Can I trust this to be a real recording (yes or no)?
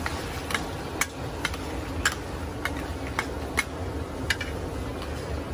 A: yes